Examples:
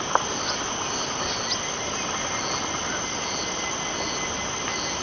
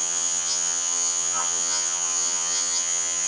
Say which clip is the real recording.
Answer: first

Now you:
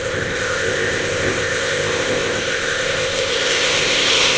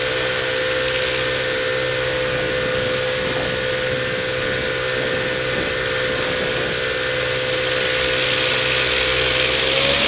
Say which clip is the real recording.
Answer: second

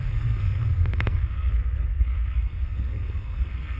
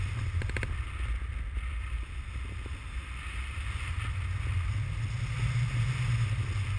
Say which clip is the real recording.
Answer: second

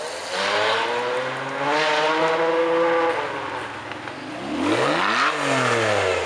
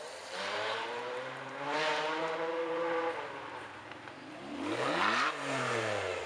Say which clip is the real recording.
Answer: first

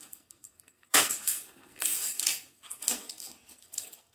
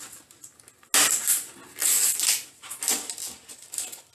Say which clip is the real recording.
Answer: second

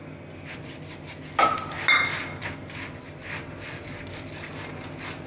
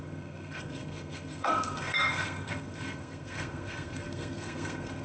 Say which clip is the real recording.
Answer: first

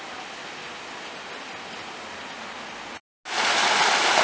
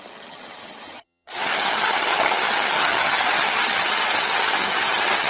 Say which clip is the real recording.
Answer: first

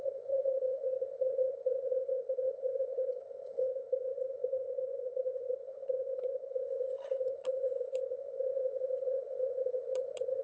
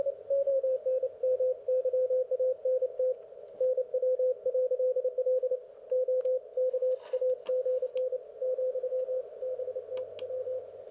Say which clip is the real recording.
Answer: second